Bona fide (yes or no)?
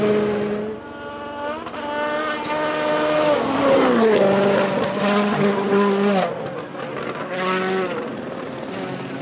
yes